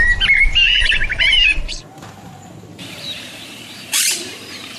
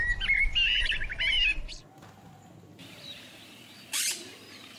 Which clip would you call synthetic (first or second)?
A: first